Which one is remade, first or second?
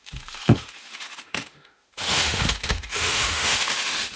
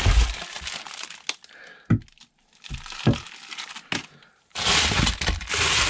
first